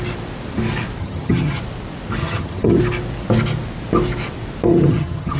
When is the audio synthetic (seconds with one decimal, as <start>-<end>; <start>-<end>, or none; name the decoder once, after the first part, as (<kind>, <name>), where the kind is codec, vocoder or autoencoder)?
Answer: 1.0-1.6 (vocoder, HiFi-GAN); 2.2-2.8; 4.7-5.4